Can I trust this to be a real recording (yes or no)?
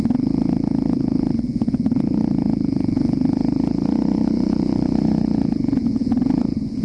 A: no